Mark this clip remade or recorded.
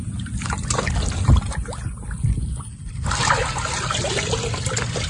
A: recorded